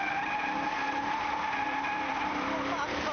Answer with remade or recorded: remade